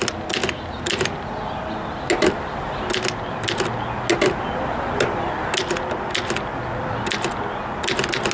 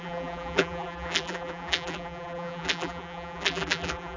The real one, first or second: first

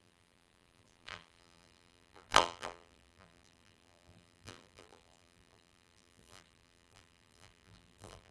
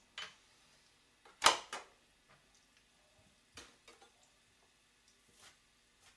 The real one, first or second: second